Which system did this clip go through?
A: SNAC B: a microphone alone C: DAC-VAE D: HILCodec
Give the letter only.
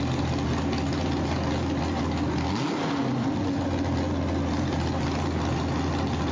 B